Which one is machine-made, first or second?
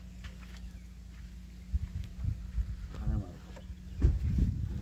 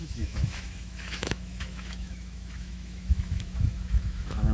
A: second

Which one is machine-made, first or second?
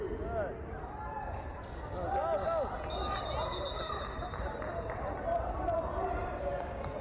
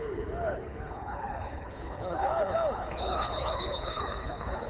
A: second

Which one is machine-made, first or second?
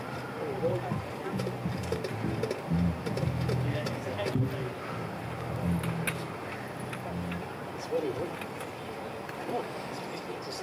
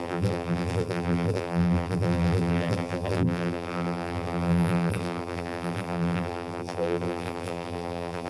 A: second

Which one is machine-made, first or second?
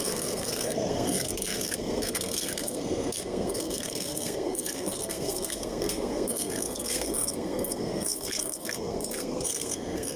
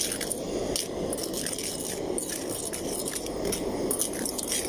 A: first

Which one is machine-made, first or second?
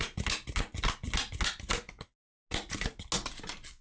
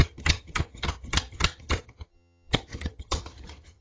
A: second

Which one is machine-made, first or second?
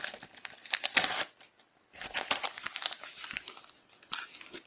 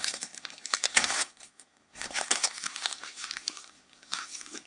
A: second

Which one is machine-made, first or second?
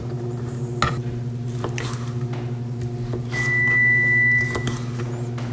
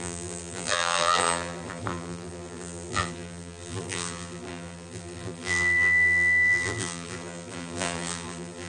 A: second